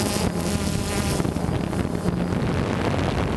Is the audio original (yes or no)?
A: yes